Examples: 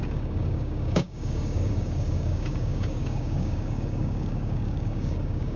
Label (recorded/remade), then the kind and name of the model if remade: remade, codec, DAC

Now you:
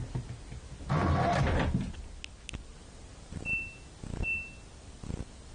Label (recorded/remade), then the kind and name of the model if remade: recorded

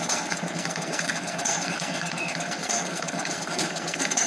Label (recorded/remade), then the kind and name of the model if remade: remade, codec, SNAC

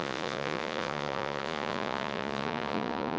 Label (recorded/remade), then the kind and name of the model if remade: remade, vocoder, Vocos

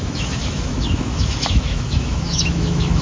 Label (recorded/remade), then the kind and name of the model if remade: remade, autoencoder, DAC-VAE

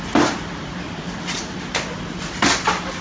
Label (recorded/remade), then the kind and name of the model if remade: recorded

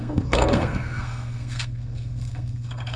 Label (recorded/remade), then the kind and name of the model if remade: remade, codec, SNAC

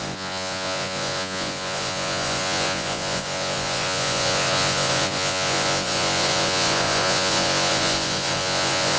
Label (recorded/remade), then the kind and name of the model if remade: remade, vocoder, Vocos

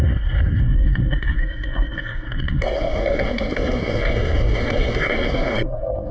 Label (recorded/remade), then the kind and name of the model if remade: remade, codec, SNAC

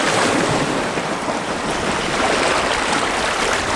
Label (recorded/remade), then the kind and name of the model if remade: recorded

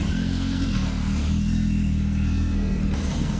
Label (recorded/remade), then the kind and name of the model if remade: remade, codec, SNAC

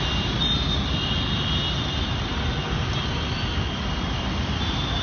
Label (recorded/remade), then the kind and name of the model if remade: recorded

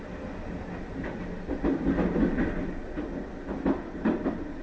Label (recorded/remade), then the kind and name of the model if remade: recorded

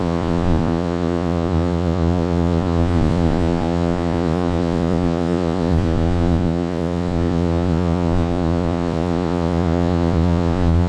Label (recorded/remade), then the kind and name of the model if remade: remade, vocoder, Vocos